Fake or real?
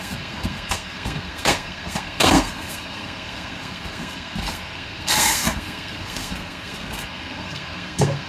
fake